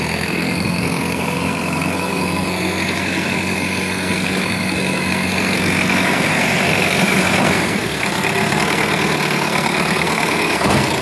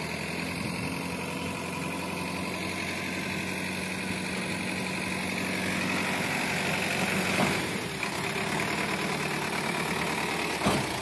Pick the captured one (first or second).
second